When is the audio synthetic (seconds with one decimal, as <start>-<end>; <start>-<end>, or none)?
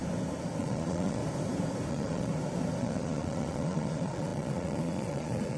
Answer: 0.6-1.2; 1.9-2.3; 2.8-5.6